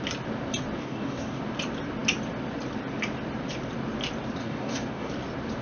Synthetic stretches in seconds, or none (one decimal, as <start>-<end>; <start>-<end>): 0.8-1.4; 4.4-5.1